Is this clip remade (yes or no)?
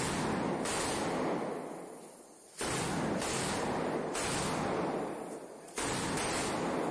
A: no